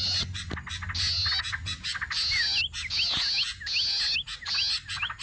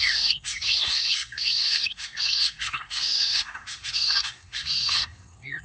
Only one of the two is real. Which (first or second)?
first